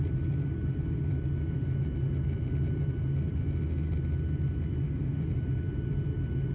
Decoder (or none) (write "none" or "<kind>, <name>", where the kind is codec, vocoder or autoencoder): none